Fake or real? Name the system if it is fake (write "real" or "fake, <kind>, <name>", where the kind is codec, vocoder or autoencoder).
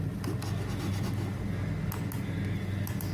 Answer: real